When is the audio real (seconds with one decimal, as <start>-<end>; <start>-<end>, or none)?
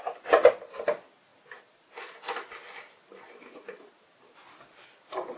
0.0-5.4